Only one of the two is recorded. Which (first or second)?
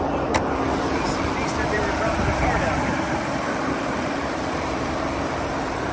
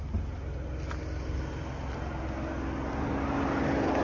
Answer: second